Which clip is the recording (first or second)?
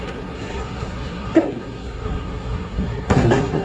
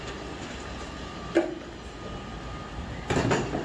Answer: second